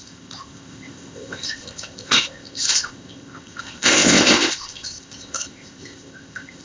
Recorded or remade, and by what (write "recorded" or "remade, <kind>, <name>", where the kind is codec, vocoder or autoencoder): remade, codec, ZipCodec